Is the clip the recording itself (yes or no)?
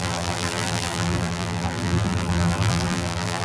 no